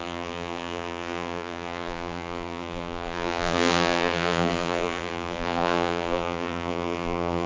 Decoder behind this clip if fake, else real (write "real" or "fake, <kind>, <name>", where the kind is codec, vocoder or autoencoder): fake, vocoder, BigVGAN v2